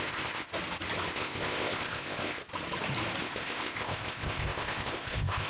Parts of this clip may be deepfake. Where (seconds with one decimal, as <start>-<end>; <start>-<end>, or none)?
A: 0.0-0.5; 1.1-2.4; 3.2-5.5